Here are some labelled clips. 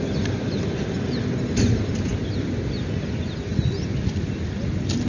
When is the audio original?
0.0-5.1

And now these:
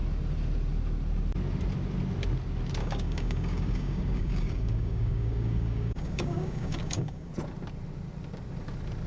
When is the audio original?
0.0-2.8; 7.3-9.1

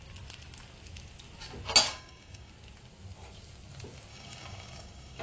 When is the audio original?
0.0-1.9; 2.5-4.1

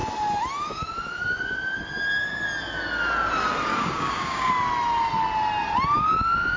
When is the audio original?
0.0-3.7; 4.5-6.6